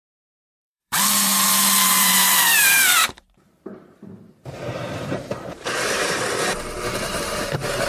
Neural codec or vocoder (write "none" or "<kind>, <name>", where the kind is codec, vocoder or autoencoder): vocoder, BigVGAN v2